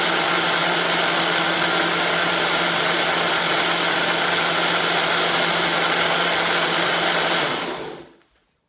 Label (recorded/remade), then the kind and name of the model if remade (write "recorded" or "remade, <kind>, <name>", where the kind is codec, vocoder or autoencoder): recorded